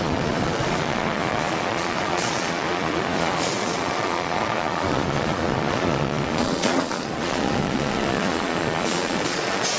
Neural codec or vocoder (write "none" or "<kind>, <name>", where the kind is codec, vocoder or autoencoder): vocoder, Vocos